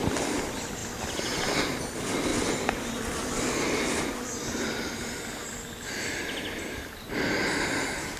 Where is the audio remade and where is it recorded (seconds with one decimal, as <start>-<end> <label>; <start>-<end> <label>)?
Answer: 0.0-8.2 recorded